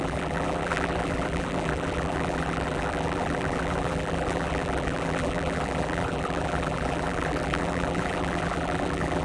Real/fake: fake